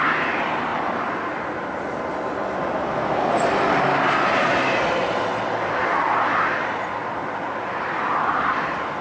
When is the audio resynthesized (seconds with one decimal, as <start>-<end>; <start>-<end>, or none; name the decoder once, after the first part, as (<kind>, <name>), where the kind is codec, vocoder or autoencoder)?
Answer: none